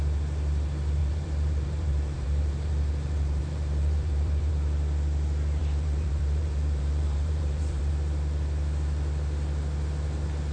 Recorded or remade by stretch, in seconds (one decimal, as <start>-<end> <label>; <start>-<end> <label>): 0.0-1.0 recorded; 1.0-4.5 remade; 4.5-5.6 recorded; 5.6-7.9 remade; 7.9-10.5 recorded